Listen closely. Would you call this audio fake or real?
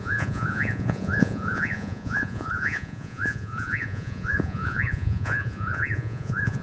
fake